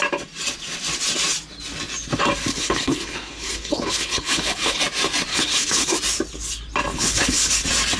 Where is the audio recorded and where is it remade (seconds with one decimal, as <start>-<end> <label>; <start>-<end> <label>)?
0.0-2.5 recorded; 2.5-4.8 remade; 4.8-5.3 recorded; 5.3-5.9 remade; 5.9-6.9 recorded; 6.9-7.5 remade; 7.5-8.0 recorded